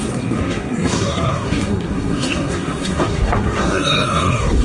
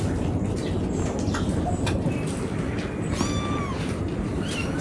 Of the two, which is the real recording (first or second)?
second